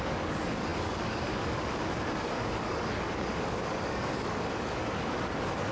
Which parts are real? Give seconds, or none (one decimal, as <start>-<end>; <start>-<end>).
none